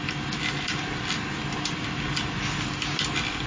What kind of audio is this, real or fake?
real